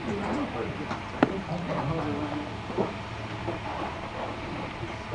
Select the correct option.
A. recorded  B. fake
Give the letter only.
A